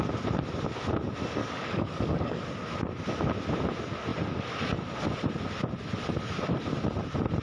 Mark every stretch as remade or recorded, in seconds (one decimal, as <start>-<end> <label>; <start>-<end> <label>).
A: 0.0-1.4 recorded; 1.4-2.4 remade; 2.4-7.4 recorded